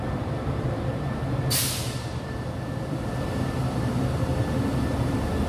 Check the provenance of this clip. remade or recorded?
remade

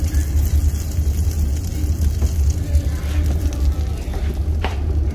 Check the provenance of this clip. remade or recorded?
recorded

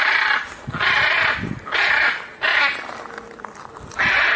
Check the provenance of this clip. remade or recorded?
recorded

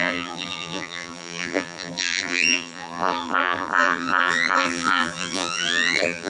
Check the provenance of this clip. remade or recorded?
remade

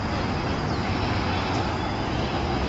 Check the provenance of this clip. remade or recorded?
recorded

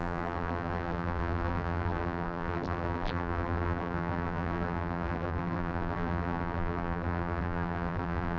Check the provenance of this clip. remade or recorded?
remade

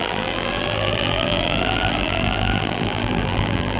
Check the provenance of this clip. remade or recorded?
remade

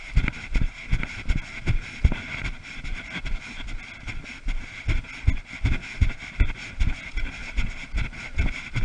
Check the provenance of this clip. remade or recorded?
recorded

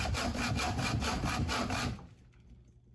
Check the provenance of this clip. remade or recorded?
recorded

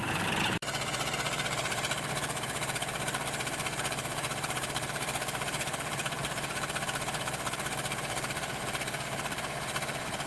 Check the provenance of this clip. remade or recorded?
remade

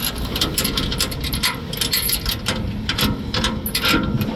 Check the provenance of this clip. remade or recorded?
recorded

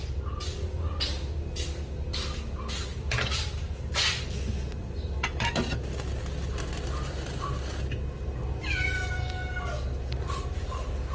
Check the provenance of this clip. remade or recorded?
recorded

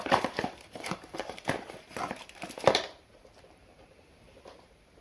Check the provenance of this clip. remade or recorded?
remade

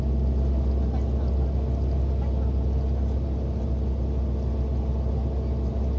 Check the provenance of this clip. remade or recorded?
recorded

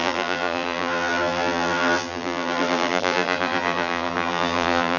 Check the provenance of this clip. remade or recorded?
remade